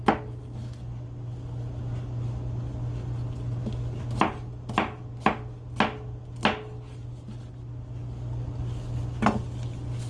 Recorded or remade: recorded